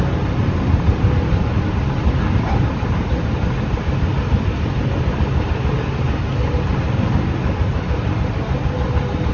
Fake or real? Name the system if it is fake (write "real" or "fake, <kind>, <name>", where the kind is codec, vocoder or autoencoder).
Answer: real